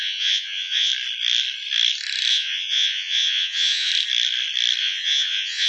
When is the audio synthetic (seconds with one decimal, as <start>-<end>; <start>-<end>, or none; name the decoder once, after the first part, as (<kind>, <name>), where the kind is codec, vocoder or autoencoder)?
0.0-0.9 (vocoder, Vocos); 2.3-3.9; 4.8-5.7